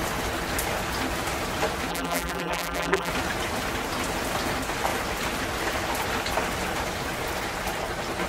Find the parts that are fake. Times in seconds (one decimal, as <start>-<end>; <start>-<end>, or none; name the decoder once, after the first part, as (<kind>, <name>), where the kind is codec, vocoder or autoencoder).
1.9-3.1 (vocoder, BigVGAN v2)